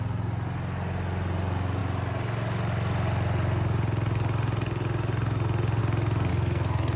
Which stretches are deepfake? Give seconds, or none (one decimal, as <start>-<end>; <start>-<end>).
6.3-7.0

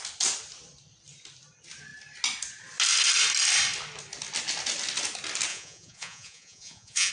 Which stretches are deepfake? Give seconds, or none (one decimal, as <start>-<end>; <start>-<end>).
5.5-7.1